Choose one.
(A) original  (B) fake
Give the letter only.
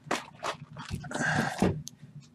A